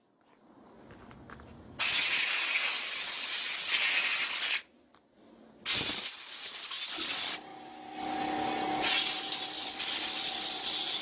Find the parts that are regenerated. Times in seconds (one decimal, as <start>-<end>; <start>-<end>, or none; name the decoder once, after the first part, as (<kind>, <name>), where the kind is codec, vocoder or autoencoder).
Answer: none